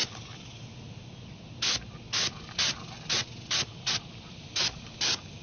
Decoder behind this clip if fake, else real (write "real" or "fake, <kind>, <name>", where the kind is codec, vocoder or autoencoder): real